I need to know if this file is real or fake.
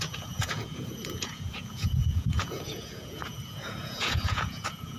fake